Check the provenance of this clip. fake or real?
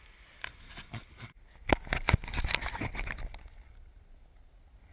real